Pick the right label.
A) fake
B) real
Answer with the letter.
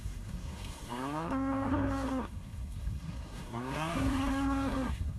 A